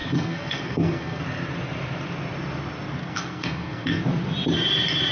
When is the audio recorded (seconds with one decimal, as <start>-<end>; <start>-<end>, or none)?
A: 1.2-3.0; 4.0-5.1